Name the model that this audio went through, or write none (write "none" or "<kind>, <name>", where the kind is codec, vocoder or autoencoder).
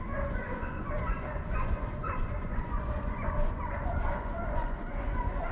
vocoder, Vocos